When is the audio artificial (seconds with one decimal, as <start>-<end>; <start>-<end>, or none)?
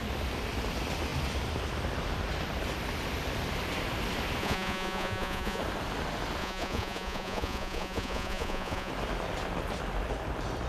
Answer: 4.4-5.6; 6.4-8.9